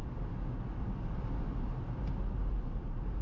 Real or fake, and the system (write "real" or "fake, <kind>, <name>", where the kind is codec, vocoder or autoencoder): real